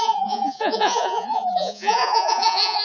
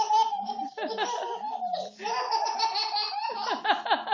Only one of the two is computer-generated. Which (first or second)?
first